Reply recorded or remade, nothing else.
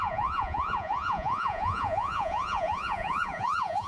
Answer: remade